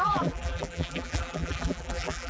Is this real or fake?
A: fake